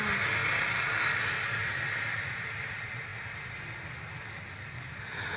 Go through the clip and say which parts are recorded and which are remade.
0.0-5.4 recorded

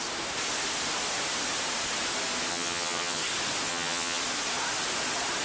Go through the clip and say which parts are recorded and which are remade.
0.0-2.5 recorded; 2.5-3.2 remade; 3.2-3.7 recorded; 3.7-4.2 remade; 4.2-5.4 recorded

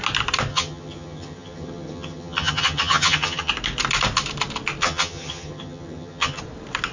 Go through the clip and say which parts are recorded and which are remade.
0.0-0.5 recorded; 0.5-3.5 remade; 3.5-4.8 recorded; 4.8-6.4 remade; 6.4-6.9 recorded

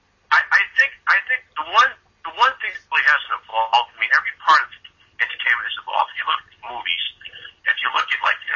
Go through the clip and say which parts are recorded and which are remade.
0.0-5.9 recorded; 5.9-6.4 remade; 6.4-7.7 recorded; 7.7-8.6 remade